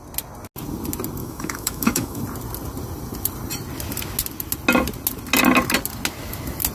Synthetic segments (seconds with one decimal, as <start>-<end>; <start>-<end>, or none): 1.2-2.2

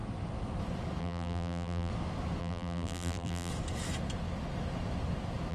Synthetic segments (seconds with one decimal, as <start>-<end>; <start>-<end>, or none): 1.0-1.9; 2.4-3.5

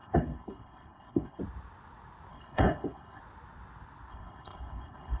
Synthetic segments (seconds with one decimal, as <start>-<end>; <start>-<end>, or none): 0.0-1.4; 2.3-3.2; 4.1-5.2

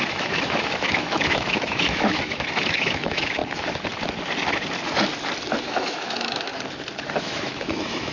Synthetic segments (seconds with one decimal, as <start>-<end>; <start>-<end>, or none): 0.0-3.4; 5.6-6.5; 7.2-8.1

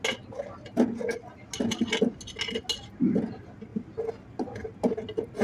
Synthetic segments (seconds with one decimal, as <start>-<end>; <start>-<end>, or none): none